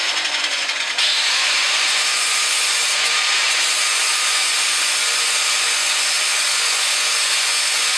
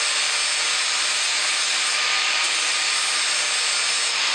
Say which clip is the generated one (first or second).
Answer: first